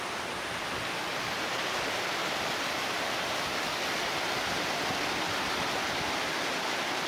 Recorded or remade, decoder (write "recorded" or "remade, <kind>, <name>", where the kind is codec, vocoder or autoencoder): recorded